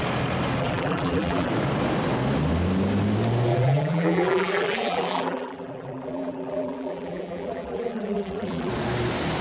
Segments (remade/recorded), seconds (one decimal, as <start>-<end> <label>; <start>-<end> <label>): 0.0-0.6 recorded; 0.6-1.5 remade; 1.5-3.5 recorded; 3.5-8.7 remade; 8.7-9.4 recorded